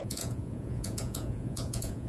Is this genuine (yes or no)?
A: no